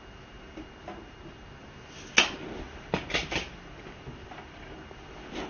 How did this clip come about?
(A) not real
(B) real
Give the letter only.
B